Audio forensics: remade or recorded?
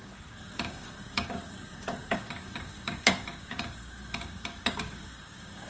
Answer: remade